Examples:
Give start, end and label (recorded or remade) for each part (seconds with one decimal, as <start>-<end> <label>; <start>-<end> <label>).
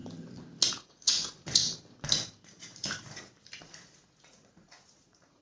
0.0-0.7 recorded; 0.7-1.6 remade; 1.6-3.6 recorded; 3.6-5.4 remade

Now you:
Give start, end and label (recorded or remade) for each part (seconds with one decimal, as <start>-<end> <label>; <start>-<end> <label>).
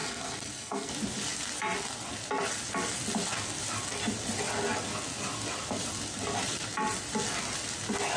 0.0-0.9 remade; 0.9-8.2 recorded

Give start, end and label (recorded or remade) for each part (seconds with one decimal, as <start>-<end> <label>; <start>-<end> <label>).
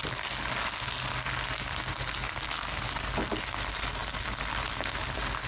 0.0-4.0 recorded; 4.0-4.7 remade; 4.7-5.5 recorded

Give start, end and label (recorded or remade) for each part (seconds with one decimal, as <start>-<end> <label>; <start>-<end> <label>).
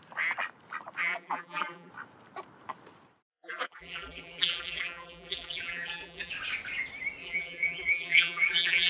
0.0-1.0 recorded; 1.0-1.9 remade; 1.9-3.3 recorded; 3.3-6.3 remade; 6.3-7.2 recorded; 7.2-8.9 remade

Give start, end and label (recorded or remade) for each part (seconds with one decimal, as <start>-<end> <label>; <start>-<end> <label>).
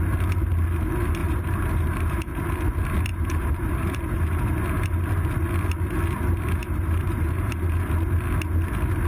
0.0-1.2 recorded; 1.2-2.4 remade; 2.4-3.1 recorded; 3.1-5.1 remade; 5.1-6.6 recorded; 6.6-7.9 remade; 7.9-9.1 recorded